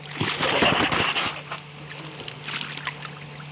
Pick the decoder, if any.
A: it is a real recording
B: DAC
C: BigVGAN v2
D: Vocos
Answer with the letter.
A